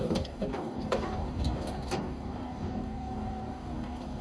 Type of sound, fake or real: fake